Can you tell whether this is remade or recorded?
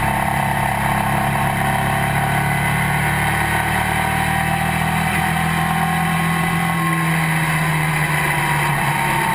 recorded